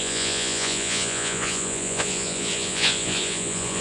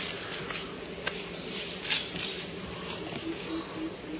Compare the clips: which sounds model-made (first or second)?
first